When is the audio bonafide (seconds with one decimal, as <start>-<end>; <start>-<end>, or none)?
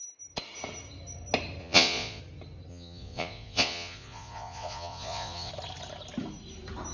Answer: 0.0-1.6; 2.2-2.7; 5.5-6.9